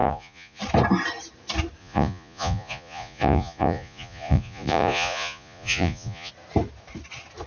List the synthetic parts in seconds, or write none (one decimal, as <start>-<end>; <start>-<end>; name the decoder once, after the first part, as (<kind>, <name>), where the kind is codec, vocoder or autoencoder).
0.0-0.6 (vocoder, Vocos); 1.8-6.3